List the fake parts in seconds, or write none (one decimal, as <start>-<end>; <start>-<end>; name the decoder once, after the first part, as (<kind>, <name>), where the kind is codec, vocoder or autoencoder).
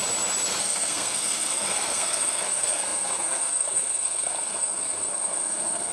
0.6-5.9 (codec, SNAC)